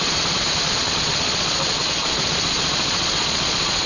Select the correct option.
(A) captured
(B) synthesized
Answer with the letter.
B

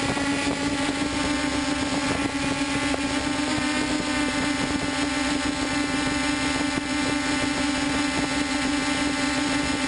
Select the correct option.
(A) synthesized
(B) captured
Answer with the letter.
B